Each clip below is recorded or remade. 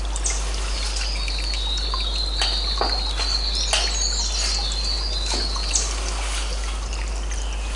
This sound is recorded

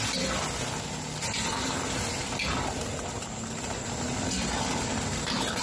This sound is recorded